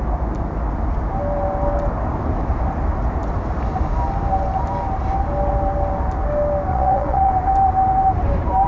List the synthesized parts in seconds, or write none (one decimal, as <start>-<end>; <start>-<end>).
6.7-7.3